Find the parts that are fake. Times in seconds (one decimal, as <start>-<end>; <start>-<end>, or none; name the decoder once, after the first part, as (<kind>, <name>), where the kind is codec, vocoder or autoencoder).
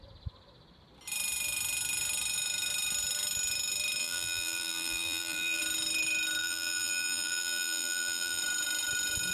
4.0-5.6 (vocoder, BigVGAN v2); 6.4-8.4